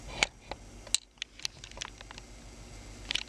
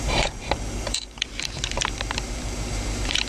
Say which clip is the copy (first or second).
second